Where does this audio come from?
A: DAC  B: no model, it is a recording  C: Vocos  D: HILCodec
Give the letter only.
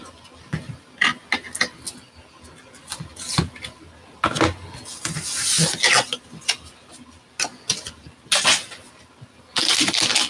B